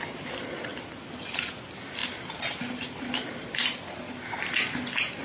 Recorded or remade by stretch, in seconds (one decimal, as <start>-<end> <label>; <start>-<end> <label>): 0.0-5.2 recorded